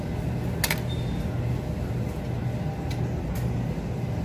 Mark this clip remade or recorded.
recorded